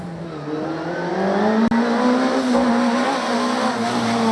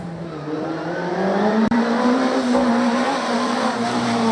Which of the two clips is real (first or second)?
first